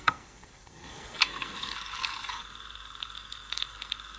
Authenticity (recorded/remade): remade